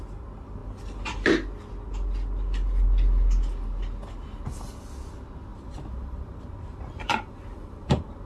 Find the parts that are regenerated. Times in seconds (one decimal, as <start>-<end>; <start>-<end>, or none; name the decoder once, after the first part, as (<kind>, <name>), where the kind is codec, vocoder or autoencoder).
5.5-8.3 (vocoder, BigVGAN v2)